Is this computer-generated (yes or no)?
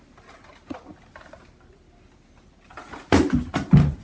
no